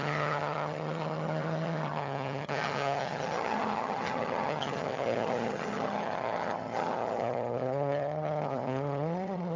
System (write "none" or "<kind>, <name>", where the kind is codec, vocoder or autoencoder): vocoder, HiFi-GAN